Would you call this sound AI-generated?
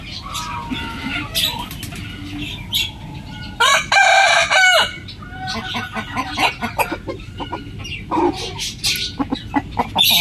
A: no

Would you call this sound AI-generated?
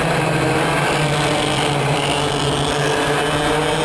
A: no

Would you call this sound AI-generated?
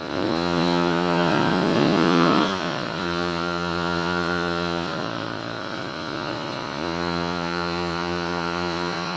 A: yes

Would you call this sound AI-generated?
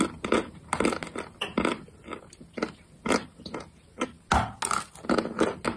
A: no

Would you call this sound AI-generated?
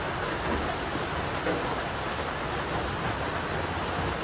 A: no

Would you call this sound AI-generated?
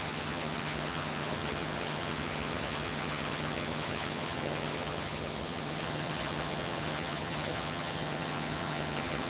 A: yes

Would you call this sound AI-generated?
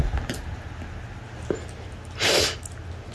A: no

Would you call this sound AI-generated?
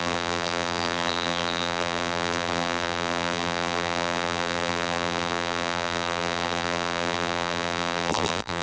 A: yes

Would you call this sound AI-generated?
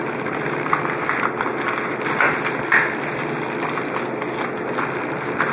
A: no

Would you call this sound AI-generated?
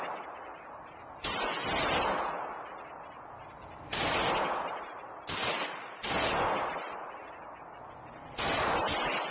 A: no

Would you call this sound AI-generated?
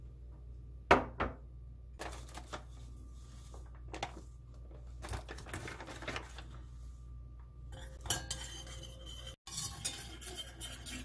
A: no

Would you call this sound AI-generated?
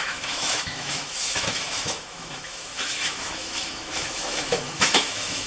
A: yes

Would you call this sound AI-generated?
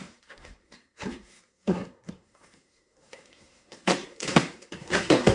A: yes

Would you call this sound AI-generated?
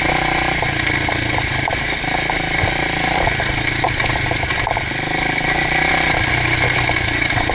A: no